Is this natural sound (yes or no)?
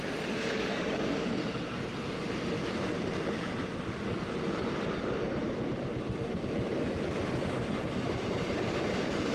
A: yes